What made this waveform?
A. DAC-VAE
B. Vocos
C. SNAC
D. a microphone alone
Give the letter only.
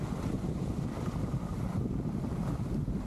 D